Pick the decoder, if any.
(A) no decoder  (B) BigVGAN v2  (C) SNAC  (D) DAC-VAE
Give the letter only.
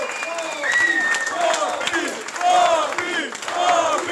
A